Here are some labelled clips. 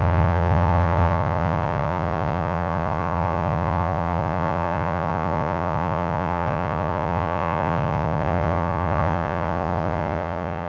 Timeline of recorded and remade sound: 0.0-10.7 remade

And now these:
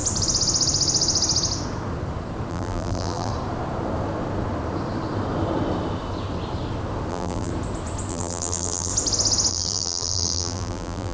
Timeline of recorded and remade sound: 0.0-2.5 recorded; 2.5-3.3 remade; 3.3-7.1 recorded; 7.1-7.5 remade; 7.5-8.1 recorded; 8.1-8.9 remade; 8.9-9.5 recorded; 9.5-11.1 remade